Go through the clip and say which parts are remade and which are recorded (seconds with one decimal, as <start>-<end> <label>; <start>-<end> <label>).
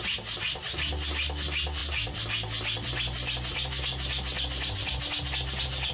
0.0-5.9 recorded